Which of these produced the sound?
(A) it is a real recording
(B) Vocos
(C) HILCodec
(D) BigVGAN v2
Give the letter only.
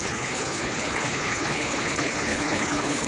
C